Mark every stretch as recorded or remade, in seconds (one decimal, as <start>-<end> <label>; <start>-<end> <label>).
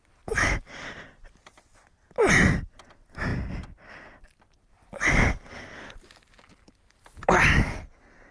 0.0-8.3 recorded